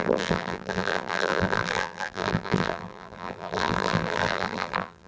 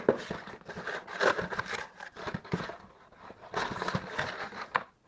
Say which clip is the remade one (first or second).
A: first